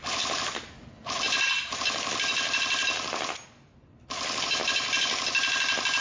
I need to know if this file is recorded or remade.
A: recorded